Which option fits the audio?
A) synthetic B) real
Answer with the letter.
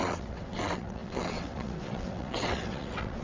A